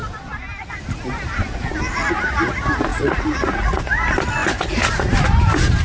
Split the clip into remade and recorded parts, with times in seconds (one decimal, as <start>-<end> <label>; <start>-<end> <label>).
0.0-2.9 recorded; 2.9-3.8 remade; 3.8-5.8 recorded